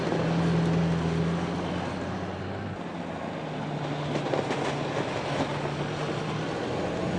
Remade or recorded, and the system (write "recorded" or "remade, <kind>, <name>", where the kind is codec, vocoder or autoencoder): recorded